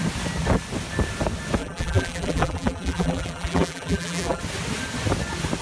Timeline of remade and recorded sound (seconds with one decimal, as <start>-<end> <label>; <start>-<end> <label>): 0.0-1.6 recorded; 1.6-4.4 remade; 4.4-5.6 recorded